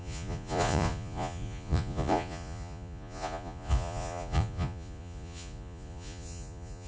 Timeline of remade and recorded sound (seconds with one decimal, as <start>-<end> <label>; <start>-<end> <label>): 0.0-6.9 remade

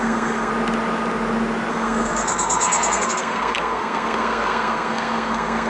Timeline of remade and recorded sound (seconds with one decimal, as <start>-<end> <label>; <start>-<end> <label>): 0.0-0.5 remade; 0.5-1.7 recorded; 1.7-5.7 remade

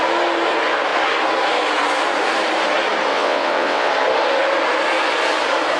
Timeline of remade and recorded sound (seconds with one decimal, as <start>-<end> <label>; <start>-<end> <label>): 0.0-3.1 recorded; 3.1-3.9 remade; 3.9-5.8 recorded